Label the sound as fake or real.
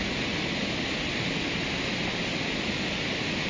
real